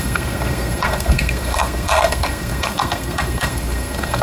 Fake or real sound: fake